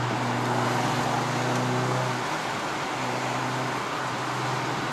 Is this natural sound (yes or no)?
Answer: yes